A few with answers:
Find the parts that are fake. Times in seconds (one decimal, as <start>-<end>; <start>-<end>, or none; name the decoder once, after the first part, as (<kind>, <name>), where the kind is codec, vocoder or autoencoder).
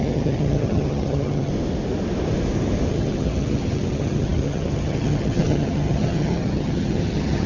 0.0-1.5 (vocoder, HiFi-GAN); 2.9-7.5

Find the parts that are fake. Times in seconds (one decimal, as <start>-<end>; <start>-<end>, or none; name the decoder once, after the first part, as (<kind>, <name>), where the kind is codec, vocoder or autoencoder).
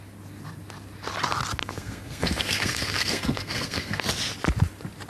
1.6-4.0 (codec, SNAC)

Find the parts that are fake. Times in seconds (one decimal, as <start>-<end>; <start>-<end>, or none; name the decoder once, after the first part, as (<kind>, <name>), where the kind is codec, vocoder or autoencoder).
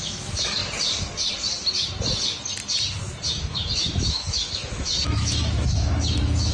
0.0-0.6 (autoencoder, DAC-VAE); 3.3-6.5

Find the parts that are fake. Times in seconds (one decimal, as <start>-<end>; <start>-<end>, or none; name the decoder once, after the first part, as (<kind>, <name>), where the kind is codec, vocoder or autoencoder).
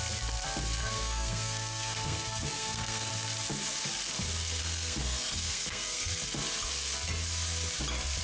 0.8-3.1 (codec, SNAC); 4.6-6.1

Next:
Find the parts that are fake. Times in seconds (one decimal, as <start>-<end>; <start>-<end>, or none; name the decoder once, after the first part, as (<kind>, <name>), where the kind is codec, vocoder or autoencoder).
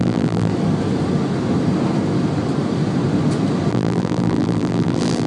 0.0-0.5 (vocoder, BigVGAN v2); 3.7-5.3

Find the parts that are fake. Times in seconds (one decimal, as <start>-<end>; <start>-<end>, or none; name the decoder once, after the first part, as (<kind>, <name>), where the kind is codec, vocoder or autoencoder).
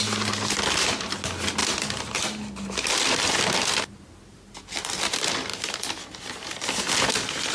none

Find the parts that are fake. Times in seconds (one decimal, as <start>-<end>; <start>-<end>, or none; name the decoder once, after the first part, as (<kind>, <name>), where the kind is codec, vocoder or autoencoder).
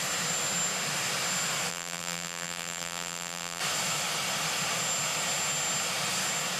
1.7-3.6 (vocoder, BigVGAN v2)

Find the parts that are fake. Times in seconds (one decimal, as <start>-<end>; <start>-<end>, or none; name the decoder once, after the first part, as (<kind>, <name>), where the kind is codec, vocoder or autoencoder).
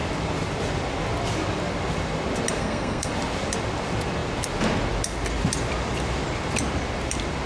2.6-3.1 (codec, SNAC)